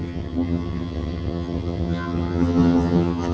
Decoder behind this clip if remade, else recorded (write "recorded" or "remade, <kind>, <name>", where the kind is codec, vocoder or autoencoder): remade, vocoder, HiFi-GAN